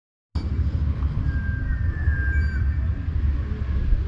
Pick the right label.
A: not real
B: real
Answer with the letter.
B